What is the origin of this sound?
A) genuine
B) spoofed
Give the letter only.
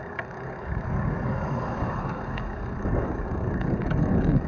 B